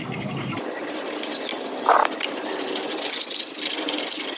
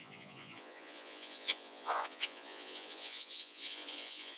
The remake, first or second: second